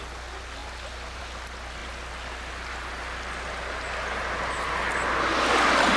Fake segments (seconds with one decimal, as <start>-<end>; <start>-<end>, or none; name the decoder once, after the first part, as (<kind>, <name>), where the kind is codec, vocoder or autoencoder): none